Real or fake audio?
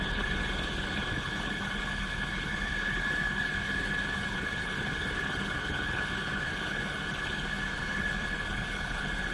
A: fake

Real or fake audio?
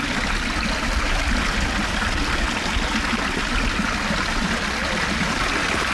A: real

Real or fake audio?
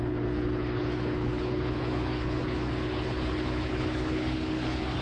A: fake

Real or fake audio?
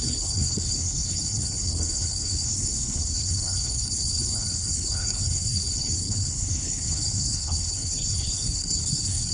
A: fake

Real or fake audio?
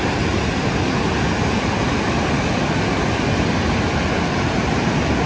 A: real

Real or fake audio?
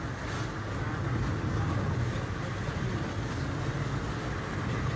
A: real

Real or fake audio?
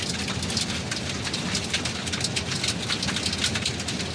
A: real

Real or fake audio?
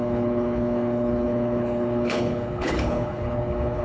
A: fake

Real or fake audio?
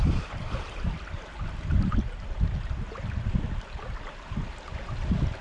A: real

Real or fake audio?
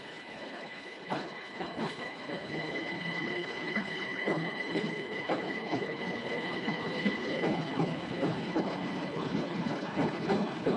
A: fake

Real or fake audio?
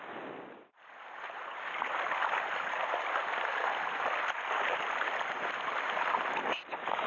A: real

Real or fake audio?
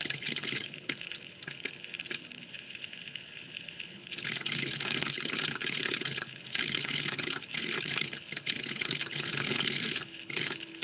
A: fake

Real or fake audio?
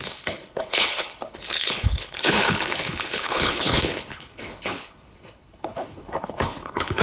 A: fake